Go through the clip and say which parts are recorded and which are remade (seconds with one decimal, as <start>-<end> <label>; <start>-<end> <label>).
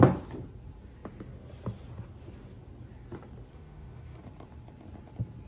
0.0-3.5 recorded; 3.5-4.2 remade; 4.2-5.5 recorded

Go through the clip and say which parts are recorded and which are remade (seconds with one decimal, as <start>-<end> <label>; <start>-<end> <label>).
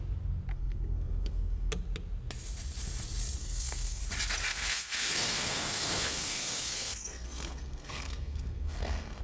0.0-0.5 recorded; 0.5-1.7 remade; 1.7-3.4 recorded; 3.4-4.0 remade; 4.0-4.5 recorded; 4.5-9.2 remade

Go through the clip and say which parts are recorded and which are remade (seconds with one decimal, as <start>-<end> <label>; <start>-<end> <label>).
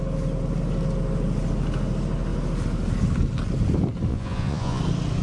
0.0-4.1 recorded; 4.1-4.8 remade; 4.8-5.2 recorded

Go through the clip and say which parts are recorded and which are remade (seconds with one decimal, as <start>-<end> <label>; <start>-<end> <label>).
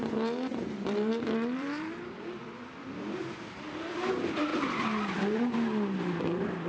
0.0-0.5 recorded; 0.5-4.0 remade; 4.0-4.5 recorded; 4.5-6.2 remade; 6.2-6.7 recorded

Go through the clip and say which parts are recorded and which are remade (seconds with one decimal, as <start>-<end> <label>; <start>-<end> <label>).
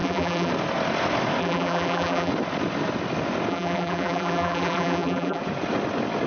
0.0-0.5 remade; 0.5-1.4 recorded; 1.4-2.3 remade; 2.3-3.5 recorded; 3.5-5.4 remade; 5.4-6.3 recorded